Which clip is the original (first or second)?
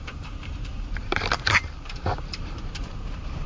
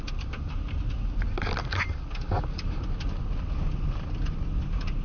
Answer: second